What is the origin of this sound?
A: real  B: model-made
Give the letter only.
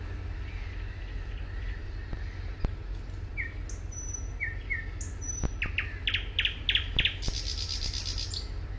A